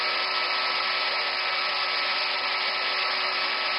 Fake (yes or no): no